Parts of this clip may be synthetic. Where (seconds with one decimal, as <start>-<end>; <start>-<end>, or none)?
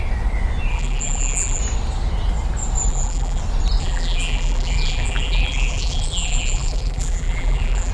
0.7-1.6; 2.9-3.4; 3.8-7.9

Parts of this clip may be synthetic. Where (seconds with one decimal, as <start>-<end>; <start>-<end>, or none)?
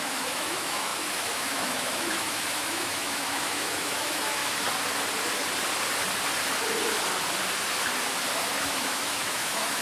0.0-4.4; 8.6-9.8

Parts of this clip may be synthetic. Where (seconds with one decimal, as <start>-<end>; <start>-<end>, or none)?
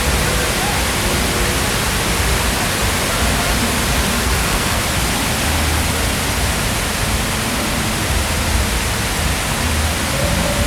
4.2-4.8